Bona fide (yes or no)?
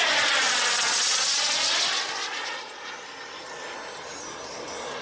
yes